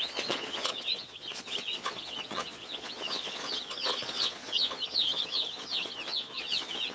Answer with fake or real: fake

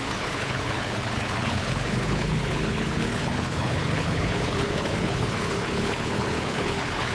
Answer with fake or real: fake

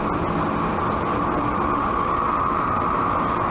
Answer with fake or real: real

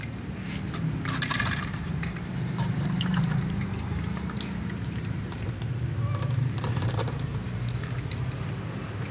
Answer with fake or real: fake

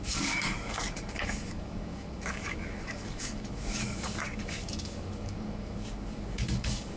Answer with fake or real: fake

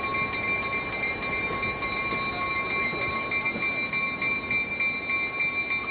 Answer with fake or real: real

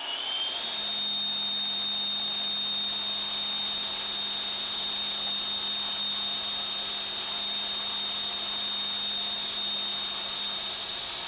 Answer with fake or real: real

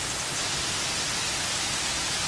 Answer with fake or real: real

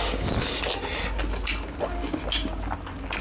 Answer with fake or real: real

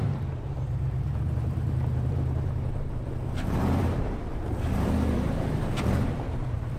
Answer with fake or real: fake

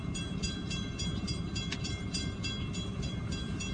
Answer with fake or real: fake